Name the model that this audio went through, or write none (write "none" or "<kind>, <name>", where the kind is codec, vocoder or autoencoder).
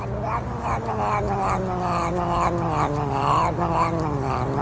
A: none